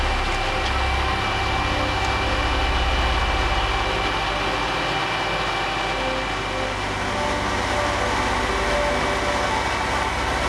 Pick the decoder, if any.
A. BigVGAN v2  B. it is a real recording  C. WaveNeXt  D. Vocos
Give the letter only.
B